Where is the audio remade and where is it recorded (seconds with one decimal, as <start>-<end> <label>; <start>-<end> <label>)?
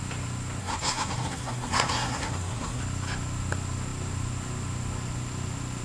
0.0-0.6 recorded; 0.6-2.8 remade; 2.8-5.8 recorded